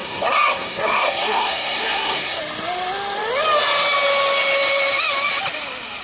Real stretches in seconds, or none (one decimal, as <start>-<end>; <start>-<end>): 2.4-6.0